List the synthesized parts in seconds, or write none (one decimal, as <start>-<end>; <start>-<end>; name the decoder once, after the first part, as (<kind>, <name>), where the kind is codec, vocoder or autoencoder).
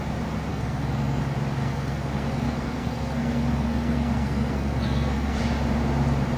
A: 0.5-1.2 (codec, SNAC); 1.6-5.4